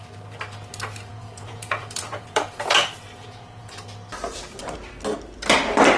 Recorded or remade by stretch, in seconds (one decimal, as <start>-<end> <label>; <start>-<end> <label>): 0.0-1.1 recorded; 1.1-3.7 remade; 3.7-6.0 recorded